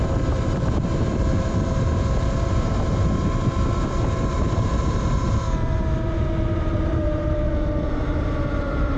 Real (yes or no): no